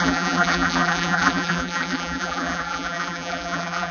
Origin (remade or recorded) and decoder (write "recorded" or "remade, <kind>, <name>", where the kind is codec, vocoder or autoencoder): remade, vocoder, BigVGAN v2